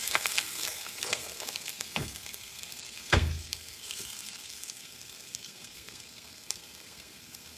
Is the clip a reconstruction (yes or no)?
yes